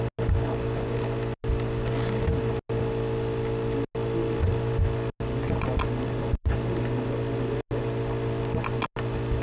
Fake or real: real